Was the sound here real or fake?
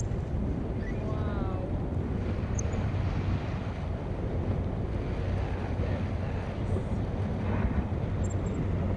real